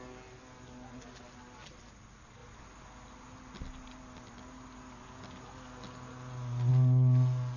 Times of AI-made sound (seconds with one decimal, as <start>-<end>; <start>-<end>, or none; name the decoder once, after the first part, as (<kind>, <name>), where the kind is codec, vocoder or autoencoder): none

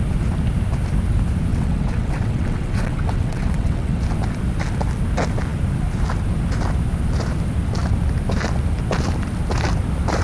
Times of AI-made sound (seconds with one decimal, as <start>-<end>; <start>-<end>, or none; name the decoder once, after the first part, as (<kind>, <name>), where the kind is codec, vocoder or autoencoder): 1.5-4.0 (vocoder, WaveNeXt)

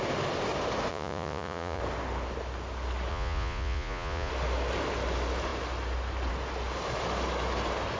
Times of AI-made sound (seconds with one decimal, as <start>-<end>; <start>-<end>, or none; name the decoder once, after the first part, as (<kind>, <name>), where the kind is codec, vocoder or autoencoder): 0.9-1.8 (vocoder, Vocos); 3.1-4.3

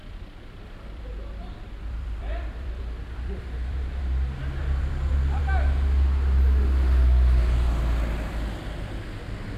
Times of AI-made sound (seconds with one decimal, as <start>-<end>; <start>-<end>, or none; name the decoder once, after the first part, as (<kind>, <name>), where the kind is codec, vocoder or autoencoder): 0.0-4.0 (vocoder, BigVGAN v2); 4.6-5.4

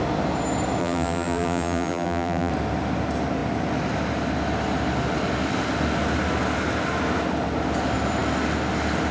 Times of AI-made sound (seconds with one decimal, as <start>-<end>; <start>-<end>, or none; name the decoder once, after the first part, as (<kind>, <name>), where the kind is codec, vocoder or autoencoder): 0.8-2.5 (vocoder, BigVGAN v2)